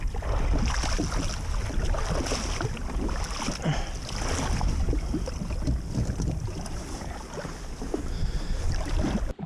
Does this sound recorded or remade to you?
recorded